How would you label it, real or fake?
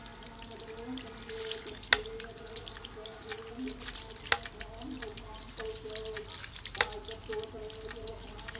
real